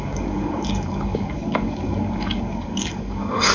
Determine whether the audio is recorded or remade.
remade